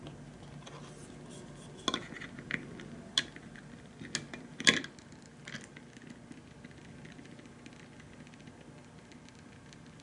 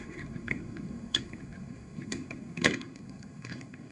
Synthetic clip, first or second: second